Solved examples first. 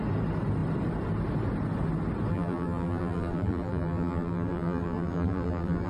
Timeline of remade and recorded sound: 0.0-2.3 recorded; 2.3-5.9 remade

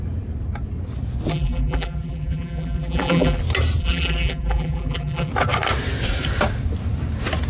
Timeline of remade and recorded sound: 0.0-1.3 recorded; 1.3-3.4 remade; 3.4-3.8 recorded; 3.8-5.3 remade; 5.3-7.5 recorded

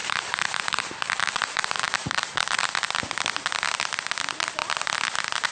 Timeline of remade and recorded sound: 0.0-2.7 remade; 2.7-5.5 recorded

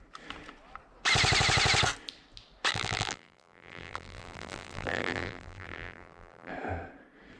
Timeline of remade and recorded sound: 0.0-2.7 recorded; 2.7-6.5 remade; 6.5-7.4 recorded

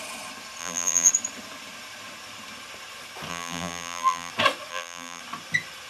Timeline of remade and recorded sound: 0.0-0.6 recorded; 0.6-1.1 remade; 1.1-3.3 recorded; 3.3-4.3 remade; 4.3-4.7 recorded; 4.7-5.2 remade; 5.2-5.9 recorded

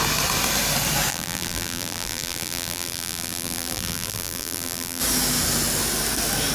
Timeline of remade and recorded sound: 0.0-1.1 recorded; 1.1-5.0 remade; 5.0-6.5 recorded

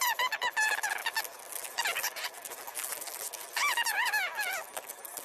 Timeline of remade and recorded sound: 0.0-5.2 recorded